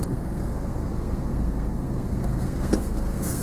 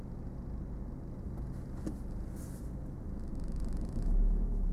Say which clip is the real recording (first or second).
second